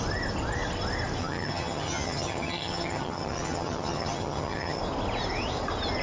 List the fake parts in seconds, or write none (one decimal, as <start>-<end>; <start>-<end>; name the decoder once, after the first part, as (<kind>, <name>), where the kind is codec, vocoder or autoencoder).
1.2-4.8 (vocoder, HiFi-GAN)